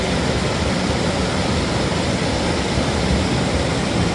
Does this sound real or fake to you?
real